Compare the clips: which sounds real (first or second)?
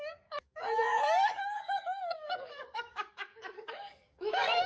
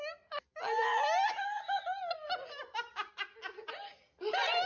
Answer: second